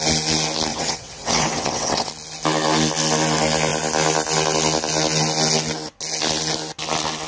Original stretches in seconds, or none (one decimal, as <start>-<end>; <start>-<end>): 0.0-0.7; 2.1-7.3